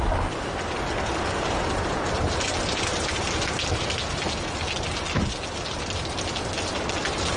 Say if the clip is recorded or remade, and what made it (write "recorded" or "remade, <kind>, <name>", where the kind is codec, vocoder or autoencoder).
recorded